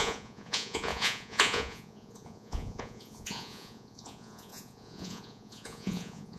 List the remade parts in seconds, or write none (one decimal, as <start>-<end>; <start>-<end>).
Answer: 0.0-6.4